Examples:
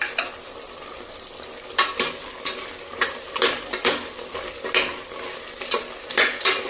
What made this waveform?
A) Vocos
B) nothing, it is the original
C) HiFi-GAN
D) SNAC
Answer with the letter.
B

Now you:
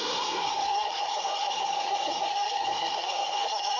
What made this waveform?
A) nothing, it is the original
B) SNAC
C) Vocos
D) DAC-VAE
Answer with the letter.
B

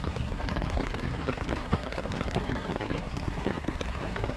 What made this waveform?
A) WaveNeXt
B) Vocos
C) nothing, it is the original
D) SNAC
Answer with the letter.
D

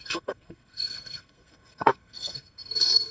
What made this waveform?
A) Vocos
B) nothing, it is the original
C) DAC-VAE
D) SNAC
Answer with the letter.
D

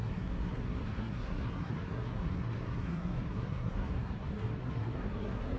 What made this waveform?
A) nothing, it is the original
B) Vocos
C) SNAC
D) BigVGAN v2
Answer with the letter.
C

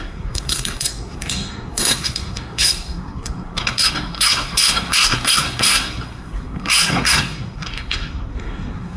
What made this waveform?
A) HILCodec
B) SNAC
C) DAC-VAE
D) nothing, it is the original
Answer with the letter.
B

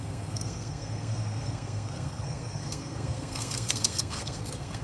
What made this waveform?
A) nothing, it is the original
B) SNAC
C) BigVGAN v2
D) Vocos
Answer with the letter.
B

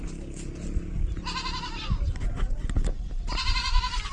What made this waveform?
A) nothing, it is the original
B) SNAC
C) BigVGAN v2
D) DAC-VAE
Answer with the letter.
A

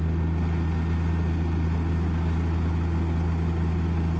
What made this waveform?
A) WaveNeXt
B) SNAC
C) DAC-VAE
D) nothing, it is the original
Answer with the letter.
D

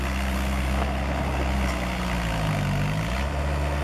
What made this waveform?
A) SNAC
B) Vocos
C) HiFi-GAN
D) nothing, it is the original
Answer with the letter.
D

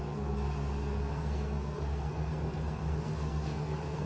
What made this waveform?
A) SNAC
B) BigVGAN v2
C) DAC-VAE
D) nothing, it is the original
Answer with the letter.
A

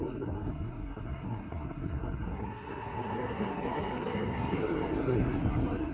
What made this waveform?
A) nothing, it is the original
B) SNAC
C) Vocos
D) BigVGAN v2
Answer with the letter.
B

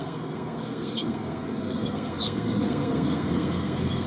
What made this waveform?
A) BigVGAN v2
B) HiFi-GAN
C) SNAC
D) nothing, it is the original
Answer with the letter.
C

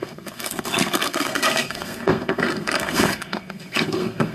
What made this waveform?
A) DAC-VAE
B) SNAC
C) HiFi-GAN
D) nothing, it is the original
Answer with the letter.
B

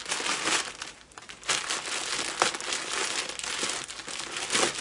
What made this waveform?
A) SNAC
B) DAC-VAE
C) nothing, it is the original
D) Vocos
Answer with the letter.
C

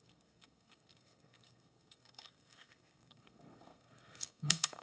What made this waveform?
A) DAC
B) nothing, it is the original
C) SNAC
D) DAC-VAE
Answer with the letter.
C